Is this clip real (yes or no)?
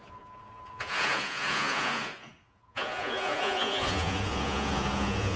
no